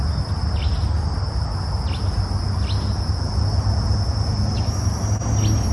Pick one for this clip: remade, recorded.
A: recorded